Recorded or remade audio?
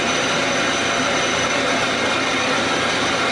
recorded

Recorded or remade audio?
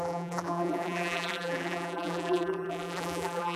remade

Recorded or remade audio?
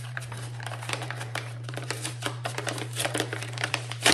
remade